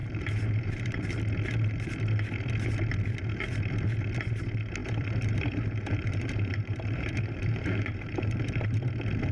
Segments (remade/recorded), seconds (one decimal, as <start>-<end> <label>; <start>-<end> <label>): 0.0-1.0 remade; 1.0-4.8 recorded; 4.8-8.7 remade; 8.7-9.3 recorded